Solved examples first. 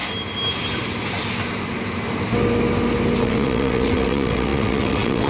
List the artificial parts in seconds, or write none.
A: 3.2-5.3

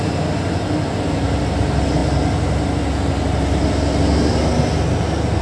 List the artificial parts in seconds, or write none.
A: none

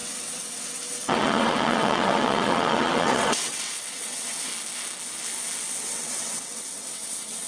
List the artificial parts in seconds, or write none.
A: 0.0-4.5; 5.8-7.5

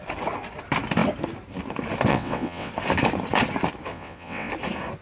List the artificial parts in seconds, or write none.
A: 2.1-2.7; 3.9-4.5

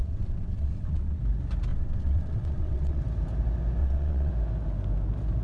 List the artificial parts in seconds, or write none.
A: 0.0-1.2; 1.7-3.0; 3.8-4.3

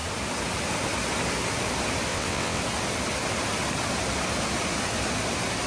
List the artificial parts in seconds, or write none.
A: 2.1-2.6